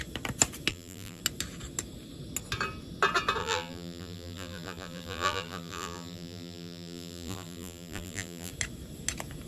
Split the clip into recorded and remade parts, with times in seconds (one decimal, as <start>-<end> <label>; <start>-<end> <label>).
0.0-0.7 recorded; 0.7-1.2 remade; 1.2-3.4 recorded; 3.4-8.5 remade; 8.5-9.5 recorded